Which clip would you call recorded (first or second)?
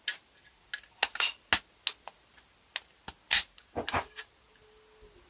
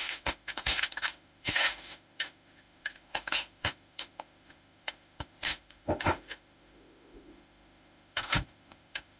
first